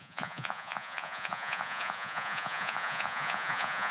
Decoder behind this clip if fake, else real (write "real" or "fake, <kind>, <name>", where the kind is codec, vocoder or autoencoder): fake, vocoder, Vocos